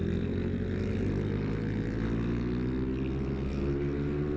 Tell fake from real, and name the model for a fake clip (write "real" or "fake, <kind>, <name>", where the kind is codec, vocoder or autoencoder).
real